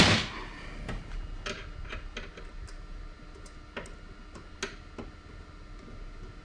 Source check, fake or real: real